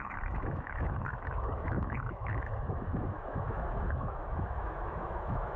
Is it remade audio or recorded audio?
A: remade